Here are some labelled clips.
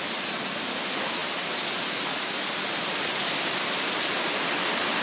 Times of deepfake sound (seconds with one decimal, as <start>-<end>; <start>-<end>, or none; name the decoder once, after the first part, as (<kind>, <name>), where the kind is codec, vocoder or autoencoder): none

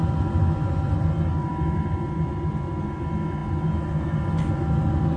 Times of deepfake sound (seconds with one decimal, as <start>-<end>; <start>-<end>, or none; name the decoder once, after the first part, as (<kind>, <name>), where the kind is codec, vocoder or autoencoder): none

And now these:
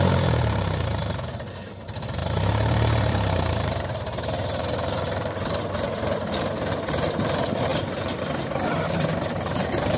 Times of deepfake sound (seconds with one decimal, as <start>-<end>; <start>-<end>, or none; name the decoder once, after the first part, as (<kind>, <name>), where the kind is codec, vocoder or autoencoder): 0.0-10.0 (vocoder, BigVGAN v2)

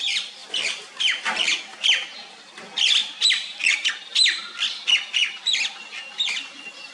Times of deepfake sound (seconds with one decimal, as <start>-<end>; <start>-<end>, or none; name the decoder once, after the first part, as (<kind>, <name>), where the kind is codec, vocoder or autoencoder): 0.4-1.0 (vocoder, BigVGAN v2); 3.0-3.9; 5.2-5.7